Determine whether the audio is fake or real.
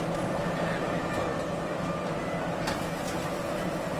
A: real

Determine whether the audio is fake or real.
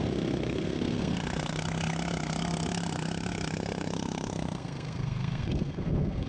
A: fake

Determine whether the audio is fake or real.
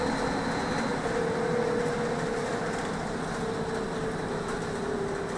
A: real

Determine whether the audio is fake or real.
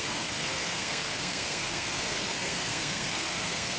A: fake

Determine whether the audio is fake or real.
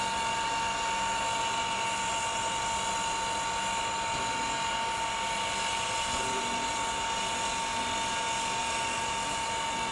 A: real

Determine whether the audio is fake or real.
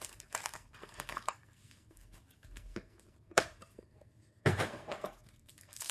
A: fake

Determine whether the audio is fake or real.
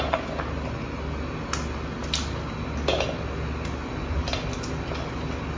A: real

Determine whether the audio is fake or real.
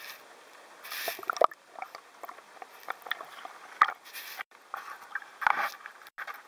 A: real